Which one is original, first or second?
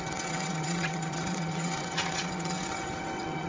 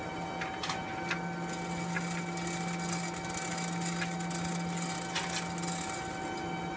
second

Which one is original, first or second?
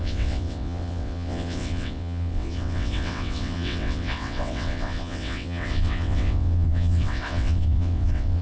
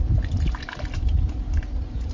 second